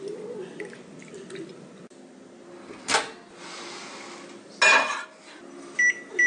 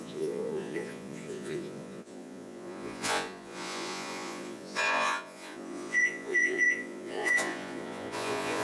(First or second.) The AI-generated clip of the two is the second